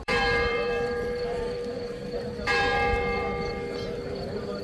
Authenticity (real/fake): fake